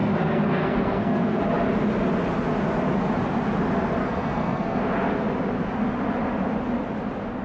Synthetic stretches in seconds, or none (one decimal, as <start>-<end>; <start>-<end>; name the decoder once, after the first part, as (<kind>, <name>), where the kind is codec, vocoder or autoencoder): 0.0-1.4 (codec, SNAC); 4.0-4.8